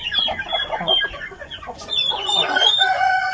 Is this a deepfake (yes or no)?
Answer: yes